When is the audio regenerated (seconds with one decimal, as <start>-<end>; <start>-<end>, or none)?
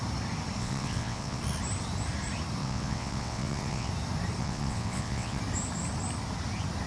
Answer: 0.6-1.4; 2.6-3.9; 4.4-5.4